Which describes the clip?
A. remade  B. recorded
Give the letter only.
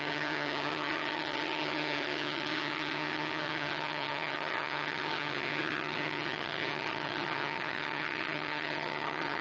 A